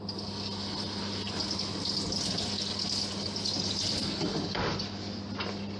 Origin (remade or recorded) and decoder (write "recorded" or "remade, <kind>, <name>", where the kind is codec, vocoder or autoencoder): recorded